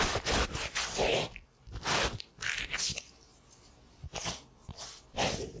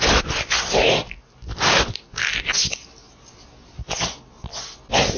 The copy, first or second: first